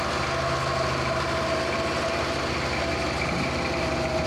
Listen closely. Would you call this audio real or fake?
real